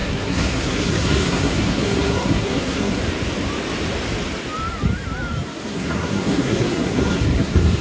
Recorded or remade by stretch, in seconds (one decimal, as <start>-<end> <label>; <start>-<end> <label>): 0.0-3.0 remade; 3.0-5.7 recorded; 5.7-7.8 remade